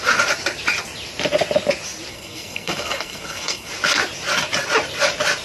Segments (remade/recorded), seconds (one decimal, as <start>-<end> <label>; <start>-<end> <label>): 0.0-2.1 recorded; 2.1-3.7 remade; 3.7-5.4 recorded